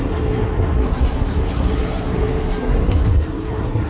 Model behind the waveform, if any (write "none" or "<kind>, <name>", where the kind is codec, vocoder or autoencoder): codec, SNAC